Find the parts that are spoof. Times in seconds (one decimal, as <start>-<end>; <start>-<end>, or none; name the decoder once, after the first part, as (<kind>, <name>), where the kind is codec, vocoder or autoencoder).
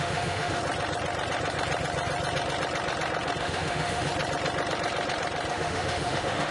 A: 0.0-0.6 (autoencoder, DAC-VAE); 3.4-4.1; 5.5-6.5